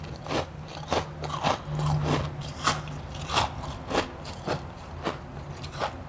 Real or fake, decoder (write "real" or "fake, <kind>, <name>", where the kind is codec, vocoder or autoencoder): real